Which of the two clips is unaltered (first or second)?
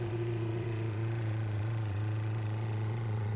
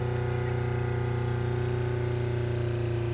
second